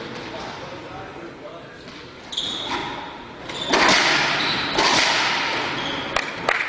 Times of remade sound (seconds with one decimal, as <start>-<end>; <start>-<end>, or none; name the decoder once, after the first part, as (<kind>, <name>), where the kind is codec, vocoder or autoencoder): none